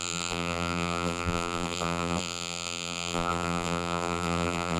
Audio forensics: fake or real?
fake